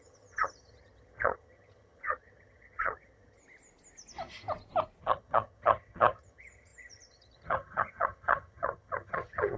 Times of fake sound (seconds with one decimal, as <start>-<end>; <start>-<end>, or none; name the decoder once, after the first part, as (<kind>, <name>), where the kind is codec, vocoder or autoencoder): 0.0-3.4 (vocoder, HiFi-GAN); 5.0-9.6